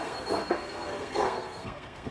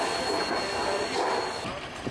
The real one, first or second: second